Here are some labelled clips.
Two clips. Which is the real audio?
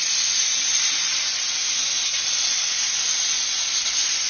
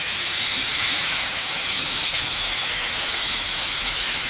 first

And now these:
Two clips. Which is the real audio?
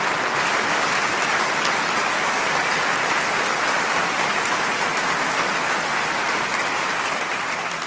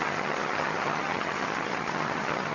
first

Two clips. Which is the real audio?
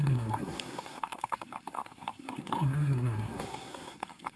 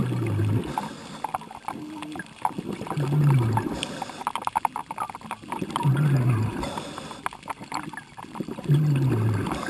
second